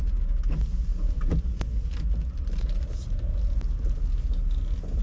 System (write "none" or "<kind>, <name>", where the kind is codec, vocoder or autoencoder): none